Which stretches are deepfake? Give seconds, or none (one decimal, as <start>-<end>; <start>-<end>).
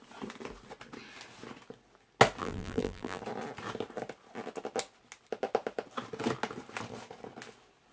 2.4-3.2